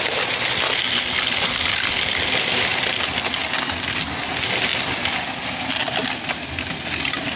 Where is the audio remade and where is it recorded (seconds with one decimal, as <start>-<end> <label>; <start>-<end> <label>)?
0.0-7.4 recorded